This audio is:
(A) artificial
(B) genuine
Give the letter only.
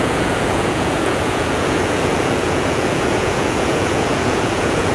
A